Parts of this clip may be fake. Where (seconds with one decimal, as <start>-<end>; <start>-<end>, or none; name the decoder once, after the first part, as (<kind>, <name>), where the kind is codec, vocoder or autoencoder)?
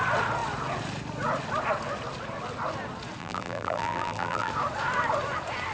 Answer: 3.2-4.5 (vocoder, BigVGAN v2)